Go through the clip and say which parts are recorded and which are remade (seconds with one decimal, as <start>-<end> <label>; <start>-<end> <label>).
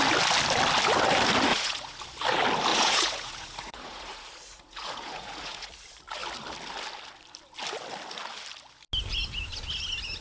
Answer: 0.0-1.5 recorded; 1.5-2.0 remade; 2.0-2.7 recorded; 2.7-5.7 remade; 5.7-10.2 recorded